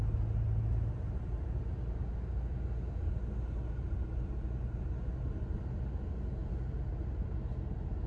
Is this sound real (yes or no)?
yes